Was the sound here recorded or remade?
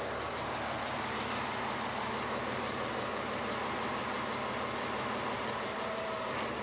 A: recorded